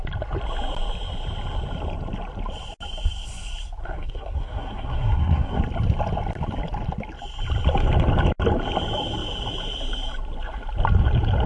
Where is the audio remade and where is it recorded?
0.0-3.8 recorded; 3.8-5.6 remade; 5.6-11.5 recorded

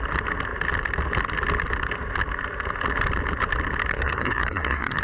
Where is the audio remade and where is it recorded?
0.0-3.9 recorded; 3.9-5.0 remade

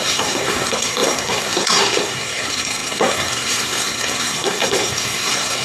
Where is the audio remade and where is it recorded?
0.0-5.6 remade

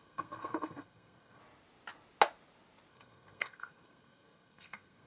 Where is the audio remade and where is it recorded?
0.0-1.4 remade; 1.4-2.9 recorded; 2.9-5.1 remade

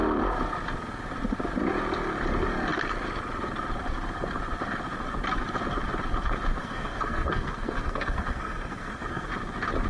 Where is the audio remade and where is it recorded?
0.0-6.6 recorded; 6.6-9.3 remade; 9.3-9.9 recorded

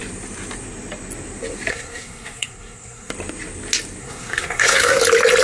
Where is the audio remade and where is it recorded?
0.0-1.7 recorded; 1.7-3.1 remade; 3.1-4.0 recorded; 4.0-5.0 remade; 5.0-5.4 recorded

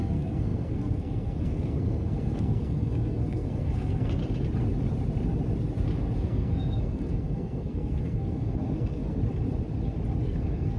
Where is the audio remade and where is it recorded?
0.0-4.2 remade; 4.2-6.2 recorded; 6.2-9.2 remade; 9.2-10.2 recorded; 10.2-10.8 remade